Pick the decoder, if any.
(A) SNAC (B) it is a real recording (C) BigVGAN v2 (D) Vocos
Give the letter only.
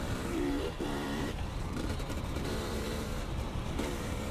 C